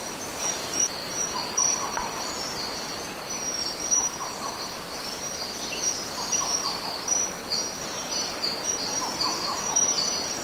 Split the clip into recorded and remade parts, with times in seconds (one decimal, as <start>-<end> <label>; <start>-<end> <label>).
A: 0.0-7.4 remade; 7.4-8.8 recorded; 8.8-10.4 remade